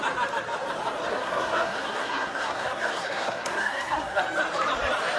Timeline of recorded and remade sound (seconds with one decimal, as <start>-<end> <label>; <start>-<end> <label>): 0.0-1.1 recorded; 1.1-4.2 remade; 4.2-5.2 recorded